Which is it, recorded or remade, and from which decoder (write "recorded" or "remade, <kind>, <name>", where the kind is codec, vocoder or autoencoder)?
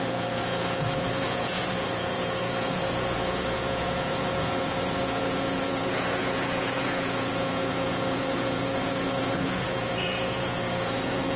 remade, vocoder, Vocos